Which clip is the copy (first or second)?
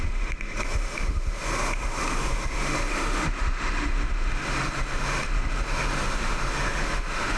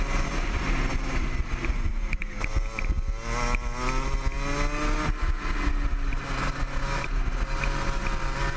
first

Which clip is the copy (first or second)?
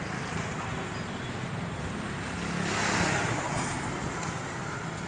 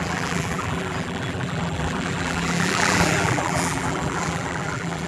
second